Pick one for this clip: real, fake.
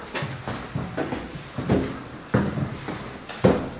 real